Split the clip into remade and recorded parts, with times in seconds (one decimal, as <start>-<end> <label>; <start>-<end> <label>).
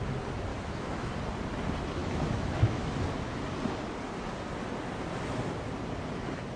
0.0-0.5 recorded; 0.5-1.1 remade; 1.1-2.0 recorded; 2.0-3.0 remade; 3.0-6.6 recorded